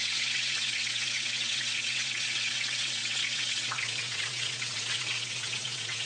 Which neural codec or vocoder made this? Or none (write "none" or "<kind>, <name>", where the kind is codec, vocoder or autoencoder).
vocoder, WaveNeXt